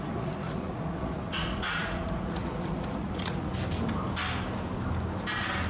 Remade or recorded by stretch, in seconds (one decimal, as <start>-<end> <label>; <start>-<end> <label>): 0.0-3.5 remade; 3.5-5.7 recorded